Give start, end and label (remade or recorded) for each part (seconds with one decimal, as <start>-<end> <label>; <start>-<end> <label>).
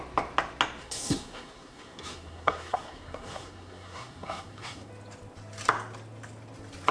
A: 0.0-0.8 recorded; 0.8-4.9 remade; 4.9-6.9 recorded